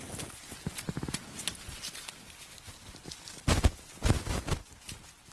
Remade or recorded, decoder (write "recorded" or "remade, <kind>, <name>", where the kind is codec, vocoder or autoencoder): recorded